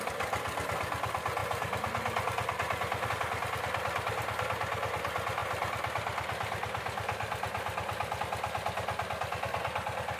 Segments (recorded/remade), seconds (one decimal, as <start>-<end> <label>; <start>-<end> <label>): 0.0-10.2 recorded